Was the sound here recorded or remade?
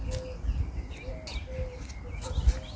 recorded